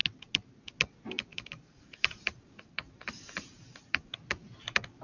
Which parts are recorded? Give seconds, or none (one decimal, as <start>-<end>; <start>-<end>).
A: 0.0-1.3; 4.3-5.0

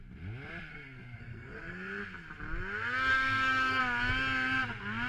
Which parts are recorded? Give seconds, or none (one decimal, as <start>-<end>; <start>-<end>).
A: 0.0-0.7; 2.0-3.1; 3.8-5.1